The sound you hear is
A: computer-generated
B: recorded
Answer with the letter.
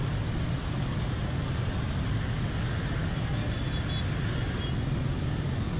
B